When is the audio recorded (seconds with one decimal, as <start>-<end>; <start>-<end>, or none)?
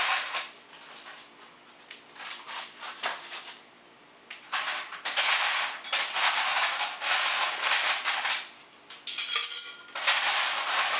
0.0-11.0